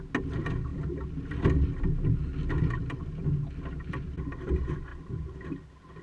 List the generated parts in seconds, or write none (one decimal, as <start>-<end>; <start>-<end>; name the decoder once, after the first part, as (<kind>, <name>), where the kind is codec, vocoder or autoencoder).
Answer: none